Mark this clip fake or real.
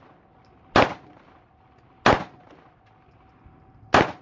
real